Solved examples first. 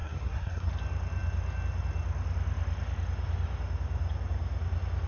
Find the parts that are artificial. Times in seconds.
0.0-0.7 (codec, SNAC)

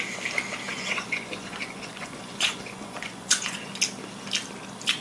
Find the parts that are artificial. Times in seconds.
0.7-3.7 (vocoder, Vocos)

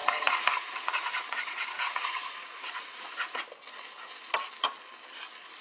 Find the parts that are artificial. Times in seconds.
0.0-3.4 (vocoder, Vocos)

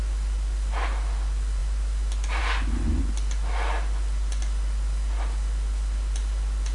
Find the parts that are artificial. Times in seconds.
none

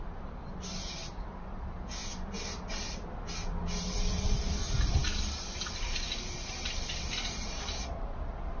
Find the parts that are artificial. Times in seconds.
none

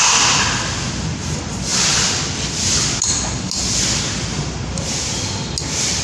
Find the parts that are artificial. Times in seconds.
none